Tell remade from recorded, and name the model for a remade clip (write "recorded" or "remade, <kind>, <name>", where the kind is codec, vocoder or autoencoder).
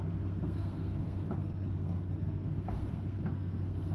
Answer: remade, codec, SNAC